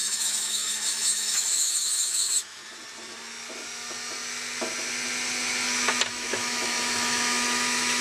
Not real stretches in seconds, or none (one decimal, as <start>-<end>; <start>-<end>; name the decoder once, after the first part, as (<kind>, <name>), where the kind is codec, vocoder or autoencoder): 0.0-2.6 (autoencoder, DAC-VAE); 6.1-8.0